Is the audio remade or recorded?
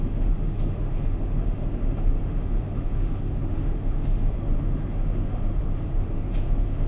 remade